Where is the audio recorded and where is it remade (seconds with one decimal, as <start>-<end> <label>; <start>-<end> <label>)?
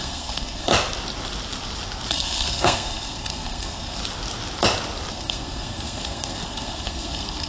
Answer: 0.0-0.7 remade; 0.7-2.1 recorded; 2.1-4.0 remade; 4.0-5.1 recorded; 5.1-7.5 remade